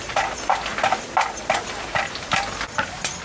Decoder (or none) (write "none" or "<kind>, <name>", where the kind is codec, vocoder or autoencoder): none